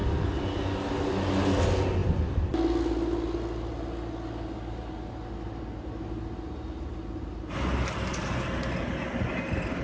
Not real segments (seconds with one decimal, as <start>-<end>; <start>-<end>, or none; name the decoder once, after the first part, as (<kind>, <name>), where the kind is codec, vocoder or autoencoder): none